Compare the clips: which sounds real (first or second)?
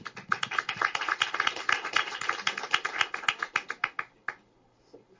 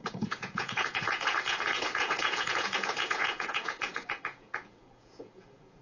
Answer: first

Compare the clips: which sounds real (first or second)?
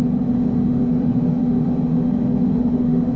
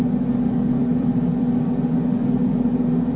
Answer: second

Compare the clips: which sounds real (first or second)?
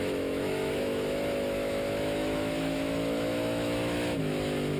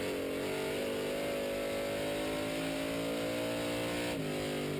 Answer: second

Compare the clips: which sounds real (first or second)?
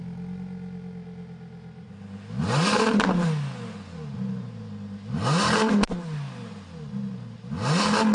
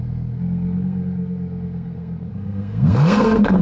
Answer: first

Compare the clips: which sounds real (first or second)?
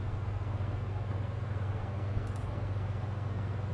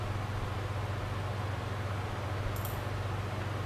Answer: second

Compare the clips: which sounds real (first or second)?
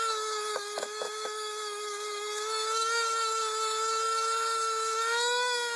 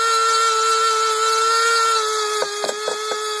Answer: second